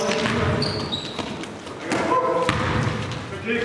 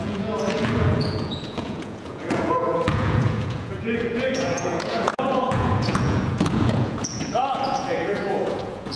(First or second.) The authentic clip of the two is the first